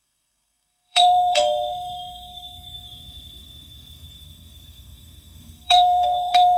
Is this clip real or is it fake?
fake